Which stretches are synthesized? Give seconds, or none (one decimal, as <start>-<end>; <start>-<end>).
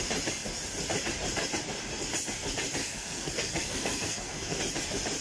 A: 2.8-4.6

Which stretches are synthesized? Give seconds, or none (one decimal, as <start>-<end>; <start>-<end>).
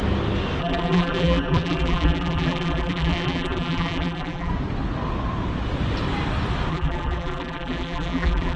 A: 0.6-4.5; 6.7-8.6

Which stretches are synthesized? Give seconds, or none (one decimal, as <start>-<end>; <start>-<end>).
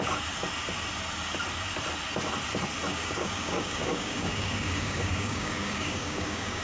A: 2.9-6.6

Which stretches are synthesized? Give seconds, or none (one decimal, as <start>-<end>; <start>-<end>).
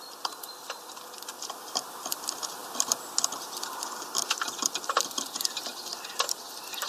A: none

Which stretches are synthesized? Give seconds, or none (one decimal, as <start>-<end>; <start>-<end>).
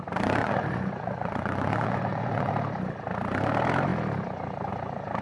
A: 0.4-2.5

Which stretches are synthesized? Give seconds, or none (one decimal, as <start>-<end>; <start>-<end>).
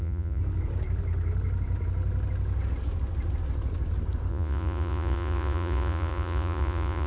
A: 0.0-0.4; 4.3-7.1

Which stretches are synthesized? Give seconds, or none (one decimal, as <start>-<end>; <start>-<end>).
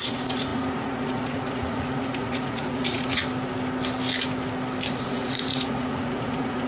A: 0.0-3.2; 4.9-6.7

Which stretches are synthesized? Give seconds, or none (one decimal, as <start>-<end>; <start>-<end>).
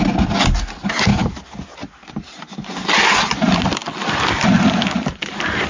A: none